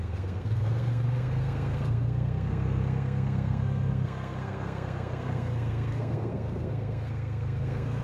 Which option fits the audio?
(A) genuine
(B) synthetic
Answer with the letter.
B